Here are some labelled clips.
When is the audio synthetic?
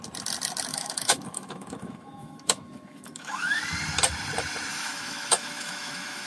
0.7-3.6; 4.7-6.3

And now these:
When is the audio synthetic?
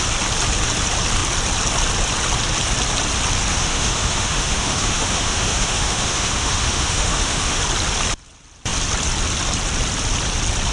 3.5-7.6